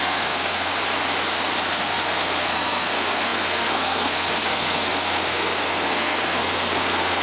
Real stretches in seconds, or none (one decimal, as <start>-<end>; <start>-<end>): 0.7-1.7